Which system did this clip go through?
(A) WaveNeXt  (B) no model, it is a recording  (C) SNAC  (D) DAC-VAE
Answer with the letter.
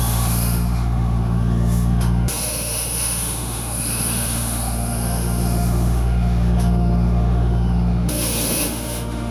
D